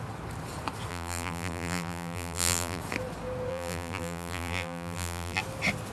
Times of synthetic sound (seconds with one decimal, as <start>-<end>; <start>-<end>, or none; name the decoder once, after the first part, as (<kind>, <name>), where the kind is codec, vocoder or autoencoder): 0.9-2.8 (vocoder, BigVGAN v2); 3.5-5.4

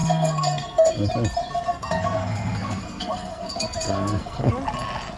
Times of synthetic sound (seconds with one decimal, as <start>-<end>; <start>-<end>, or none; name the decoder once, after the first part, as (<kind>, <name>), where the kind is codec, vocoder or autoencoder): 0.0-1.1 (codec, SNAC); 1.7-4.5

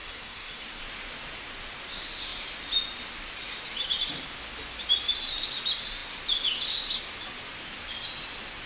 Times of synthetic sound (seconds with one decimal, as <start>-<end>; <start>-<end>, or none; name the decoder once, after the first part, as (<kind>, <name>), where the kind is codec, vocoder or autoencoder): 0.0-0.8 (codec, SNAC)